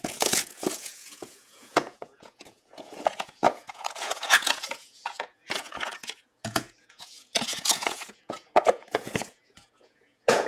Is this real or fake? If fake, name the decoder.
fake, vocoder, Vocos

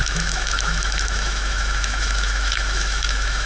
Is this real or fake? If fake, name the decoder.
fake, autoencoder, DAC-VAE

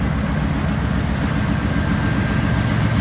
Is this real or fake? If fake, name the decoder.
real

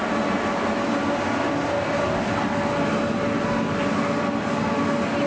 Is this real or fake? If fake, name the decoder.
real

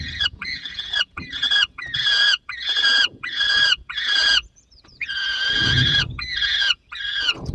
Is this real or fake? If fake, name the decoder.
fake, vocoder, Vocos